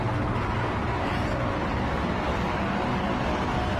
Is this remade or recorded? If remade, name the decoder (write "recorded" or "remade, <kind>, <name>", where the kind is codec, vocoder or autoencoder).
recorded